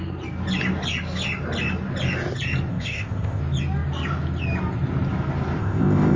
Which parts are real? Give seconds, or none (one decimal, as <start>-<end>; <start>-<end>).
0.0-2.7; 3.4-5.6